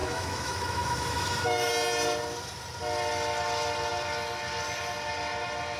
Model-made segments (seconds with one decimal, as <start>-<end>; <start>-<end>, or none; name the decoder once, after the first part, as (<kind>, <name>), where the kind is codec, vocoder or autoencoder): 0.0-1.7 (autoencoder, DAC-VAE)